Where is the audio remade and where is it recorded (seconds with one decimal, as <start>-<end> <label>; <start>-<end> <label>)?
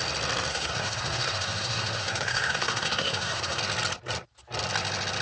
0.0-0.5 recorded; 0.5-3.6 remade; 3.6-5.2 recorded